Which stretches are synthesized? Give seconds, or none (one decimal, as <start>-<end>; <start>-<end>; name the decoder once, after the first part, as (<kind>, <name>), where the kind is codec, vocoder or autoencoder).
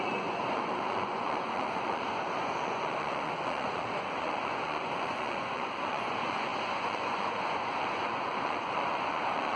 0.0-9.6 (vocoder, Vocos)